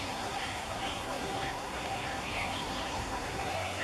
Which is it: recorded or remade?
remade